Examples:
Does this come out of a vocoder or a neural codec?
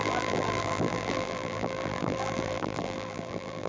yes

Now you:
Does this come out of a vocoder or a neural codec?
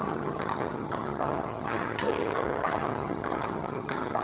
yes